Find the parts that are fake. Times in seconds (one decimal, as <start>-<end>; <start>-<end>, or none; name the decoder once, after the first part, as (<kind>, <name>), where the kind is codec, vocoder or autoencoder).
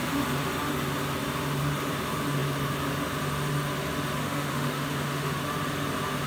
4.2-5.4 (autoencoder, DAC-VAE)